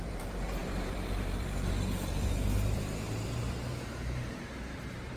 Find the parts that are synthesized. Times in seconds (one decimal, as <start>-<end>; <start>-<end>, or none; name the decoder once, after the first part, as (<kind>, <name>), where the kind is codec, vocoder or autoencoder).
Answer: 0.0-5.2 (vocoder, BigVGAN v2)